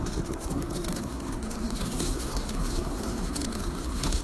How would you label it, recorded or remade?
remade